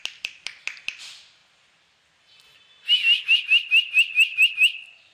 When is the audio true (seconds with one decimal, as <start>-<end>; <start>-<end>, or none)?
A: 0.0-5.1